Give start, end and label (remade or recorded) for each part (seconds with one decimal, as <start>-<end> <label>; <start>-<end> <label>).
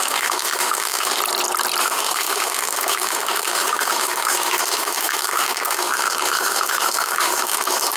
0.0-1.2 remade; 1.2-1.8 recorded; 1.8-8.0 remade